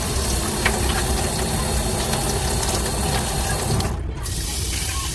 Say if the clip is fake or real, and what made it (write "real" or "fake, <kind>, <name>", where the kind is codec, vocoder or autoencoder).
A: real